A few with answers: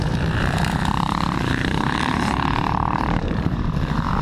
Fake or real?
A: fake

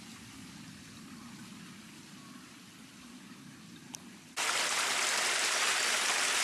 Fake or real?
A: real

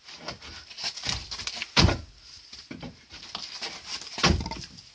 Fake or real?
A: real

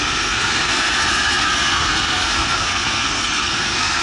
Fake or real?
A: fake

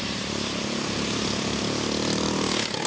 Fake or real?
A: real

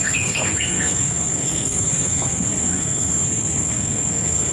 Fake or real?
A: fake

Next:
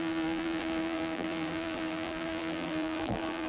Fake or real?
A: fake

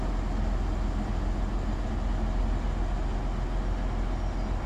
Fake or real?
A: real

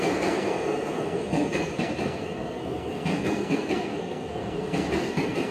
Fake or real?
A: fake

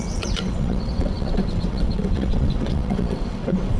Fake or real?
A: fake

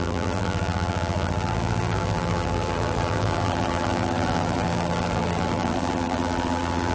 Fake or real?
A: fake